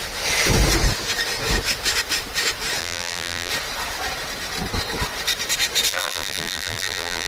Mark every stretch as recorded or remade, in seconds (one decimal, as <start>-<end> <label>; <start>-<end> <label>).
0.0-2.8 recorded; 2.8-3.5 remade; 3.5-5.9 recorded; 5.9-7.3 remade